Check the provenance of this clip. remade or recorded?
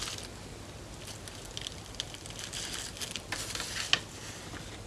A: recorded